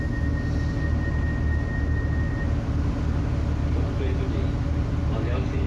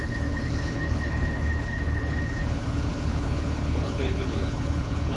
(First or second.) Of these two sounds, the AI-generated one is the second